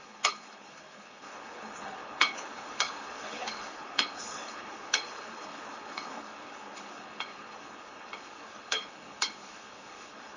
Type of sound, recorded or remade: remade